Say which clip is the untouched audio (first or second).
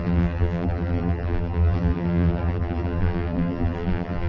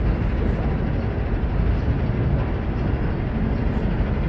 second